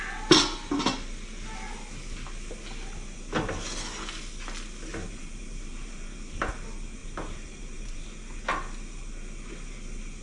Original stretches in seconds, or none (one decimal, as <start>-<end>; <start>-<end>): 0.0-4.9; 6.4-7.0; 8.0-10.2

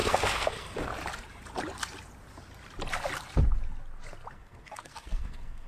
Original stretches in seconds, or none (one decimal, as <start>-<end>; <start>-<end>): 0.9-4.3

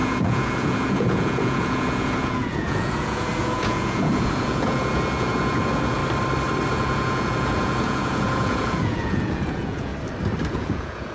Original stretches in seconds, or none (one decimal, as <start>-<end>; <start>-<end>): 6.0-6.7; 9.9-10.5

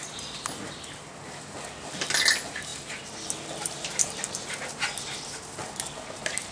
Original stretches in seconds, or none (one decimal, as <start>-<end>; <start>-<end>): 0.0-6.5

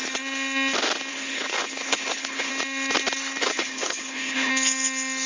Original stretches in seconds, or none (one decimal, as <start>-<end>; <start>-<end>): 0.0-1.1; 2.5-3.4; 4.5-5.3

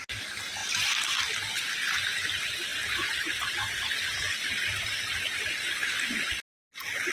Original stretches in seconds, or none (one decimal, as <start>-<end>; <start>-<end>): 0.0-7.1

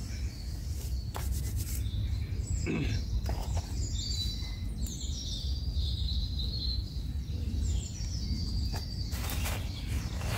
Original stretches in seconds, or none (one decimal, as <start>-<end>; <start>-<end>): 0.0-10.4

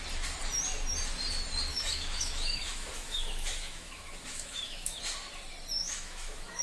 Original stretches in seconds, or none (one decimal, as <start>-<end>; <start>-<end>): 0.0-1.7; 5.0-5.8